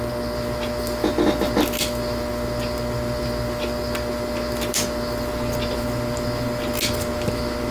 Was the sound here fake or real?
real